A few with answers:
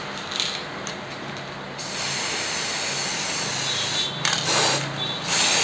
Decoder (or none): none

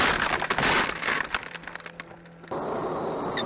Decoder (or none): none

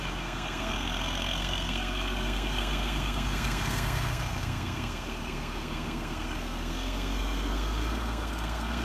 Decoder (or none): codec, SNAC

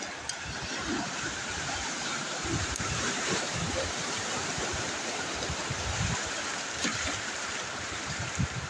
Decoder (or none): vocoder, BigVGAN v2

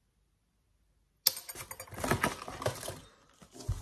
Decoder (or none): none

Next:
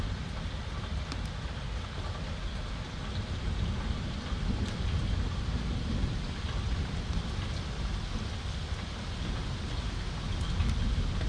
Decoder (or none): none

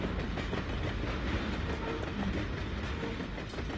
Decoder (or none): none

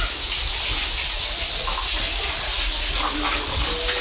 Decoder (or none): none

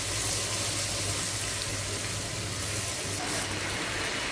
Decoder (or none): none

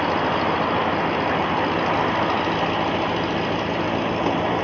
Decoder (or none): none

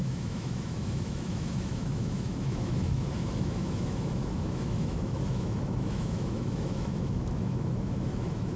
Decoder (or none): autoencoder, DAC-VAE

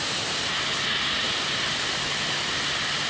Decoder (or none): none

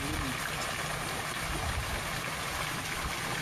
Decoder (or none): none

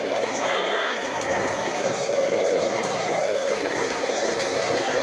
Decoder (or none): codec, SNAC